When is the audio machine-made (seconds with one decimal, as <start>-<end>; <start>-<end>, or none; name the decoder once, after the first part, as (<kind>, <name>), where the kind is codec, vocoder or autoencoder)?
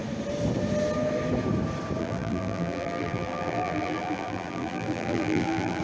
2.0-5.8 (vocoder, BigVGAN v2)